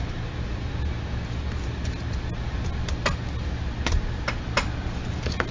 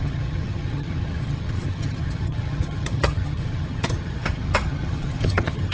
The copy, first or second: second